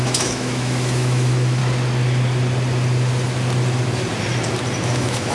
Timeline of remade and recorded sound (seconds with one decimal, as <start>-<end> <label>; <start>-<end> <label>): 0.0-1.6 remade; 1.6-4.8 recorded; 4.8-5.3 remade